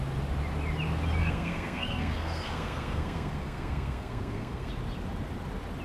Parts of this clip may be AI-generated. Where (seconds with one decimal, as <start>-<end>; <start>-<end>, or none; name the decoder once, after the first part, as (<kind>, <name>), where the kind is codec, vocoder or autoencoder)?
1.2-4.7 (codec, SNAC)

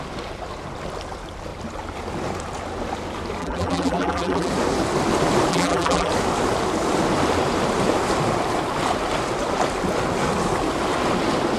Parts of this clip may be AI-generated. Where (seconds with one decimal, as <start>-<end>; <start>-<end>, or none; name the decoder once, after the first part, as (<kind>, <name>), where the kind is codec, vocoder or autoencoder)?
3.4-4.5 (vocoder, BigVGAN v2); 5.5-6.1

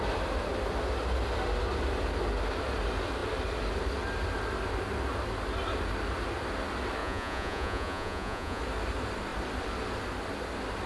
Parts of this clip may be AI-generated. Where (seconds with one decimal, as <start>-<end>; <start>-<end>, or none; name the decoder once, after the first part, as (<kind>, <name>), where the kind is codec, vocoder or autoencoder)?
7.0-8.6 (vocoder, Vocos)

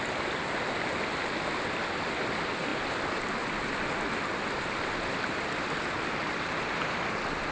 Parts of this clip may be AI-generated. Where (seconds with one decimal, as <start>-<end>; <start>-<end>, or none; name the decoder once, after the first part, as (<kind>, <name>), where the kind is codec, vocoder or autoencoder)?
none